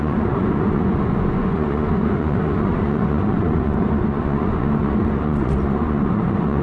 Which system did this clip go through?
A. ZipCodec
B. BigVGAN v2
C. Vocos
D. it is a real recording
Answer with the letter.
C